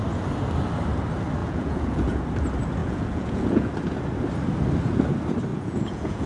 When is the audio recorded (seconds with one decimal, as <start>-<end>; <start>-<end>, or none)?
0.0-1.4; 2.2-2.8; 3.7-5.5